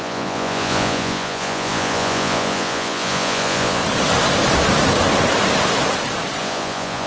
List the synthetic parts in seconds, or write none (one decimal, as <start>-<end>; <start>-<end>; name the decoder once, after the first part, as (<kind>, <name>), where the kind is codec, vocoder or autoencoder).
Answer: 0.0-3.8 (vocoder, Vocos); 6.4-7.1